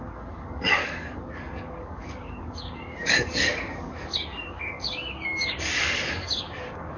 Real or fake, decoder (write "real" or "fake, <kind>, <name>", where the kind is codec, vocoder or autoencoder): fake, codec, DAC